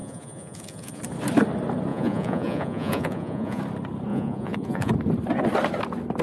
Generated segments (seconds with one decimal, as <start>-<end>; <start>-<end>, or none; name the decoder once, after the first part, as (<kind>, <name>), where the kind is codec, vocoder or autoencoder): 0.0-1.0 (vocoder, Vocos); 1.9-3.6; 4.1-4.9